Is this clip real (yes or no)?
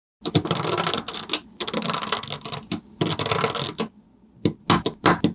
yes